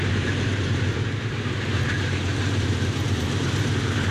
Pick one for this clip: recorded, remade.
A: remade